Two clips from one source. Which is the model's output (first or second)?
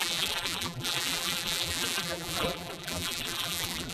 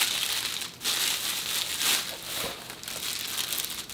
first